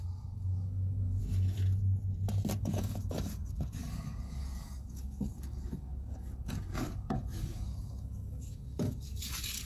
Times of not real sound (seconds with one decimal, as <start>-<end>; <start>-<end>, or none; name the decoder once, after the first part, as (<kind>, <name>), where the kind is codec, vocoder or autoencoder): 0.0-1.2 (codec, DAC); 2.6-9.7